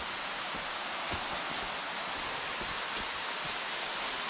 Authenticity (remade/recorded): recorded